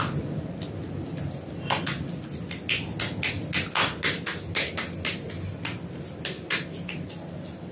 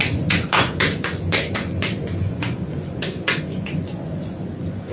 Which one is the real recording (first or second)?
first